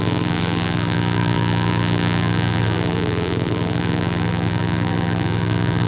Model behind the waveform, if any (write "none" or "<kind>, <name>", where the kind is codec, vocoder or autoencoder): vocoder, BigVGAN v2